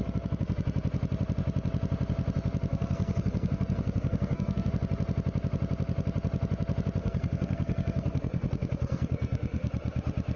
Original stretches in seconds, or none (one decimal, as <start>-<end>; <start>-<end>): 0.0-2.7; 4.7-7.0; 9.7-10.4